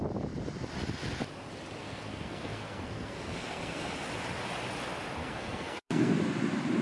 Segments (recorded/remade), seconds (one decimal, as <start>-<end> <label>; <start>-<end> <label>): 0.0-1.8 recorded; 1.8-3.9 remade; 3.9-5.2 recorded; 5.2-6.1 remade; 6.1-6.8 recorded